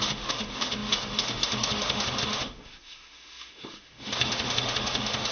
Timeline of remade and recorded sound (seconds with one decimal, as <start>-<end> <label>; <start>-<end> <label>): 0.0-5.3 remade